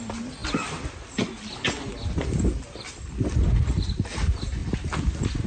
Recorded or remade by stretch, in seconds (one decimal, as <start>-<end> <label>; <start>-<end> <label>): 0.0-5.5 recorded